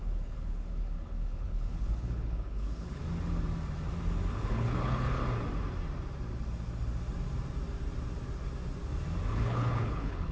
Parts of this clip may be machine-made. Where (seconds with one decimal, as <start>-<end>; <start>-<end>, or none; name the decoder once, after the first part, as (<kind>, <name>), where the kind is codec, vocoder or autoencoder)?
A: 0.0-3.0 (codec, HILCodec); 4.3-5.2; 9.3-10.3